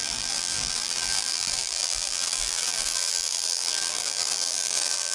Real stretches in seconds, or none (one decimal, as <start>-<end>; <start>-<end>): none